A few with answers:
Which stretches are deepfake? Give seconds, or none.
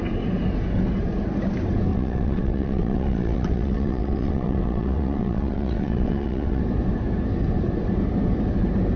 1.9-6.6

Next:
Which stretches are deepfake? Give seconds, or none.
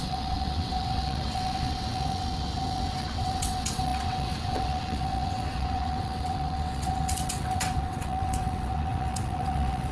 0.0-9.9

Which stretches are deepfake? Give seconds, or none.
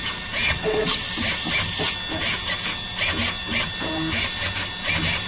0.4-1.1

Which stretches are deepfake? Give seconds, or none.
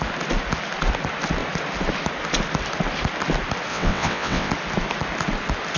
3.7-4.5